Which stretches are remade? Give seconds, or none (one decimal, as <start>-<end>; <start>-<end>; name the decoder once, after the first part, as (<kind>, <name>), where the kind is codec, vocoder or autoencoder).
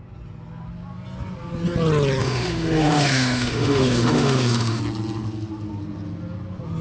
2.2-4.8 (autoencoder, DAC-VAE)